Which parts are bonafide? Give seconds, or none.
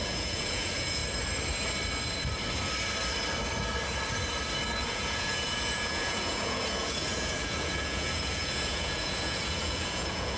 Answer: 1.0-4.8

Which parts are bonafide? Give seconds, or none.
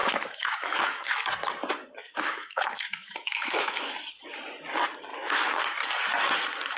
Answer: 1.3-2.0; 3.9-5.1; 5.6-6.8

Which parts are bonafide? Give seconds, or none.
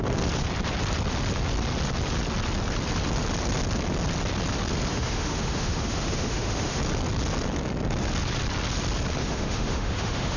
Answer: 0.0-4.9; 6.8-9.2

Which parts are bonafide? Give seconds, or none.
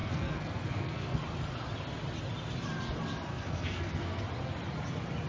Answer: 1.2-3.3; 4.2-5.3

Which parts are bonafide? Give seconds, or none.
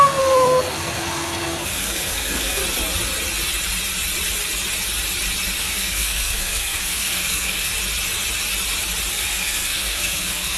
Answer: 2.6-5.6; 7.7-9.1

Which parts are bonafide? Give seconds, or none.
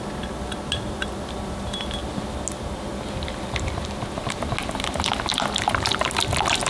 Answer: 0.0-6.7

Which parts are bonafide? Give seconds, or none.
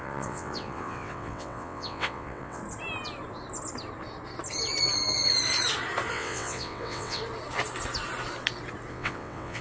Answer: 2.6-6.1; 7.2-8.9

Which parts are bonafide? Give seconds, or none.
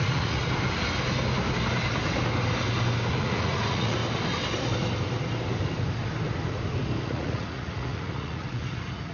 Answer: 0.4-3.1; 4.0-7.0